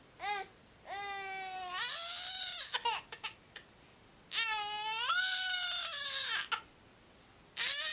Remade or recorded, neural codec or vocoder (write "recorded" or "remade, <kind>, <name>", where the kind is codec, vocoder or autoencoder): recorded